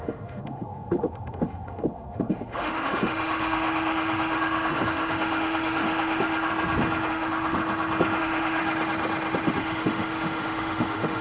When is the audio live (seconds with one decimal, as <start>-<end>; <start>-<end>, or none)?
6.5-7.1; 7.6-8.2; 8.6-9.6